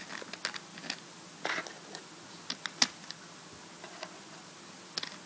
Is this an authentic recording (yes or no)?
yes